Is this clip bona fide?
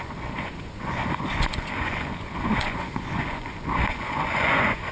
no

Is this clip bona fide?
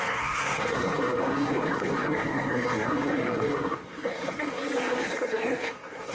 no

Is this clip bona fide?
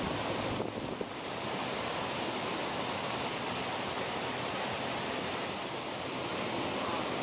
yes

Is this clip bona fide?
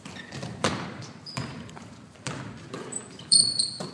no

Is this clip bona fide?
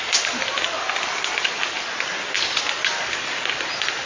yes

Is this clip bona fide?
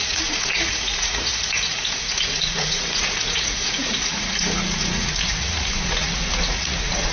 no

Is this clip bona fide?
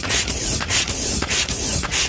no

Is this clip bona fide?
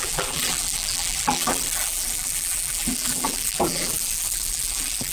no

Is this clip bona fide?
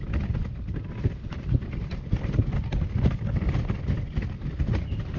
yes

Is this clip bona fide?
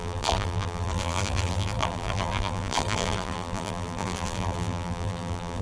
no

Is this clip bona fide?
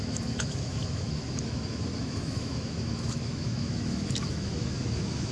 no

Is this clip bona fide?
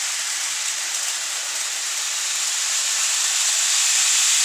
yes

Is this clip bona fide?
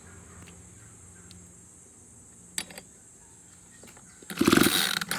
yes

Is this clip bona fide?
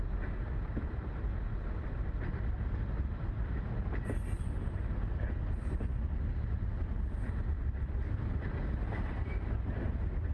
yes